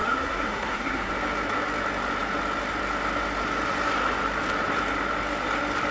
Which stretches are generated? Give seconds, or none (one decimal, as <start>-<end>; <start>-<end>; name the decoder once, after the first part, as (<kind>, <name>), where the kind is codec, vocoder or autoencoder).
0.0-1.1 (codec, SNAC)